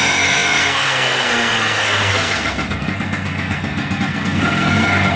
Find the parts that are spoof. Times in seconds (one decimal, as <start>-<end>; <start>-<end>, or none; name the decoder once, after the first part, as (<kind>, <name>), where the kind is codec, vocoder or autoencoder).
0.0-5.2 (codec, SNAC)